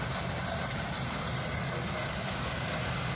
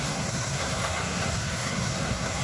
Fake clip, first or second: second